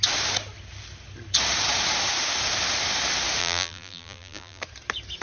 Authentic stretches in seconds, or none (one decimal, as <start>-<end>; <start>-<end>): 0.0-3.4; 4.6-5.2